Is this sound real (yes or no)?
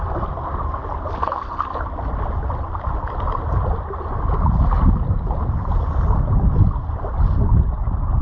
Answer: yes